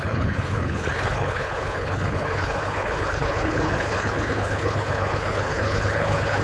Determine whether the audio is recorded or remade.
remade